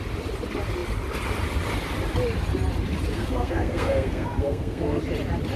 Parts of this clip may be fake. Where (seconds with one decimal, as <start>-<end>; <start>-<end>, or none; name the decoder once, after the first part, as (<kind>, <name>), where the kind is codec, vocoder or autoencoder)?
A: 3.1-5.0 (codec, SNAC)